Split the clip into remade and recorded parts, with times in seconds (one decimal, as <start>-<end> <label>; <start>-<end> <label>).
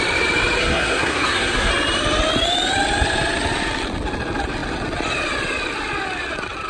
0.0-0.6 recorded; 0.6-1.7 remade; 1.7-6.7 recorded